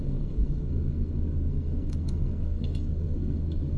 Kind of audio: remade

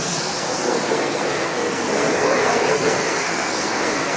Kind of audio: remade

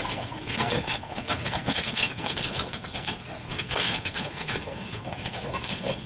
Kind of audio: remade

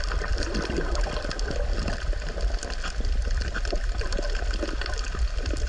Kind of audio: recorded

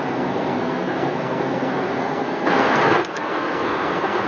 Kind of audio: remade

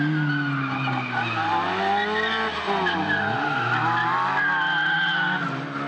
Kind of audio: recorded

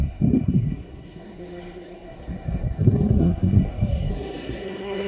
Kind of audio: remade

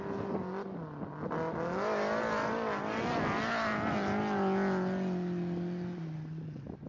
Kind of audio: recorded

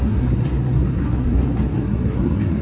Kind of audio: remade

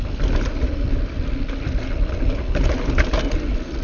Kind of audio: recorded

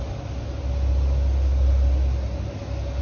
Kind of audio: recorded